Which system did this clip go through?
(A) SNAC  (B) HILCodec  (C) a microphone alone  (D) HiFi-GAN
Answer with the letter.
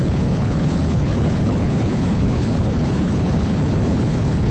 B